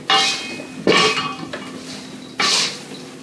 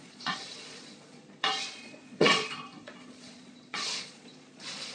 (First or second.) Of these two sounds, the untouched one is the first